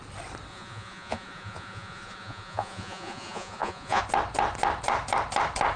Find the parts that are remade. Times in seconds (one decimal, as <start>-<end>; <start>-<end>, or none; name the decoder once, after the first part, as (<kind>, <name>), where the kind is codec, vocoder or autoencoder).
0.5-4.0 (vocoder, Vocos)